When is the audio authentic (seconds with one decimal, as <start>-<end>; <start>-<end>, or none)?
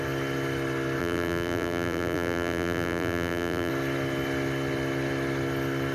0.0-1.0; 3.7-5.9